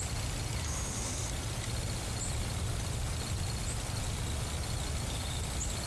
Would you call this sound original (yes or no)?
yes